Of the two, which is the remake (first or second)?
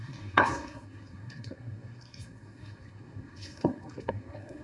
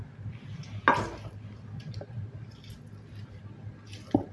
first